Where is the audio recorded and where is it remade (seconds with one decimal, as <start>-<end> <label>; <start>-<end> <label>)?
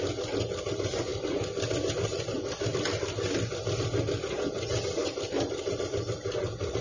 0.0-1.1 recorded; 1.1-3.5 remade; 3.5-5.0 recorded; 5.0-5.8 remade; 5.8-6.8 recorded